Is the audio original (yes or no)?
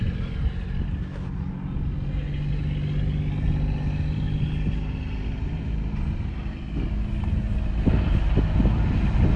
yes